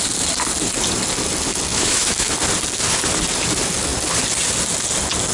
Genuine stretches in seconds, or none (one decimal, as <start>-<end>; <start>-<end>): 0.0-1.7; 2.3-5.3